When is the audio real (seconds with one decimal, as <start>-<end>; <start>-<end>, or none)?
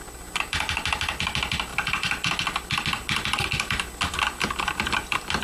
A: 0.0-5.4